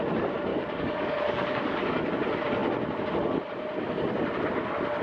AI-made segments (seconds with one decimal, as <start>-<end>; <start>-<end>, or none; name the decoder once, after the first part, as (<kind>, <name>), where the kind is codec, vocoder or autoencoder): 0.5-2.1 (codec, DAC)